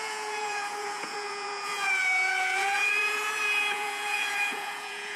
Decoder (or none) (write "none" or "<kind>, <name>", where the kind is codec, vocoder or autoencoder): vocoder, Vocos